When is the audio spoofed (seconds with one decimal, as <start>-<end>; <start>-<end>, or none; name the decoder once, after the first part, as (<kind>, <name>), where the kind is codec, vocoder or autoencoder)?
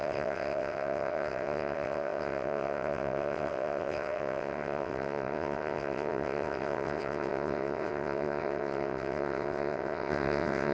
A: 0.0-10.7 (vocoder, WaveNeXt)